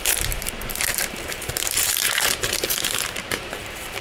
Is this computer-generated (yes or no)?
yes